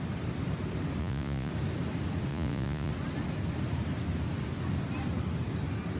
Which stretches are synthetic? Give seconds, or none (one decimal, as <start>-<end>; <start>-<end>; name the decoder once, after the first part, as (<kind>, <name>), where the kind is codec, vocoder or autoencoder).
1.0-1.5 (vocoder, Vocos); 2.3-2.9